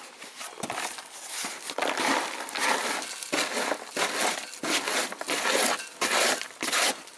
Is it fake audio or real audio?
real